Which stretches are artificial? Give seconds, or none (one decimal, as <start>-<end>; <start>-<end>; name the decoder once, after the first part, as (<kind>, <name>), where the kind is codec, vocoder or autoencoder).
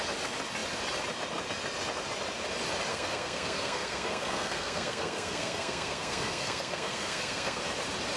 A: 2.9-7.6 (codec, SNAC)